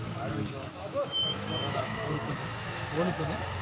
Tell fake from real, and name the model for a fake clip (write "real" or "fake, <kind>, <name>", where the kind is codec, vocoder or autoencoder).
fake, autoencoder, DAC-VAE